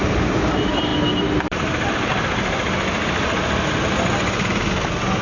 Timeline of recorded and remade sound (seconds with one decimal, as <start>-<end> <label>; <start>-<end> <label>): 0.0-0.9 remade; 0.9-1.4 recorded; 1.4-2.1 remade; 2.1-5.2 recorded